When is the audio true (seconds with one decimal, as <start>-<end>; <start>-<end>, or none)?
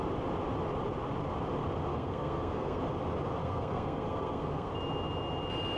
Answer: 0.0-1.9; 2.8-3.4; 4.7-5.8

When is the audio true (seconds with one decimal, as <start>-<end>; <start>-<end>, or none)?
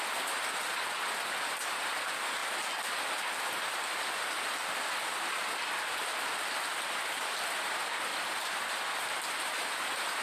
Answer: 0.0-8.1; 8.7-10.2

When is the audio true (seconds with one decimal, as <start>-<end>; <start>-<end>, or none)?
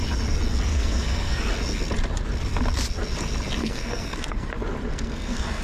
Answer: 0.0-0.7; 1.4-3.6; 4.5-4.9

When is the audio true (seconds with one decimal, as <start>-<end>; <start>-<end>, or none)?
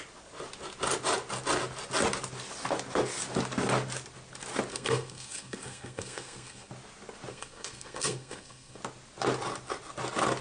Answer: 0.0-4.7; 6.7-7.3; 8.8-10.4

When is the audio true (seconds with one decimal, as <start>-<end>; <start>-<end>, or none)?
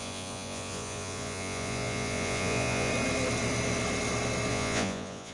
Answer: 2.9-4.5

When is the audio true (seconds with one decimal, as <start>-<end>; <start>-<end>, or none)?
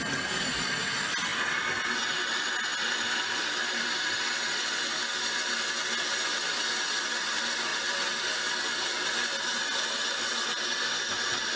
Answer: 0.0-11.6